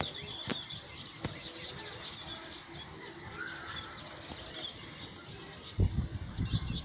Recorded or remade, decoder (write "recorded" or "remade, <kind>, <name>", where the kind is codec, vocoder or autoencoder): recorded